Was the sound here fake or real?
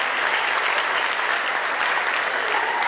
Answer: real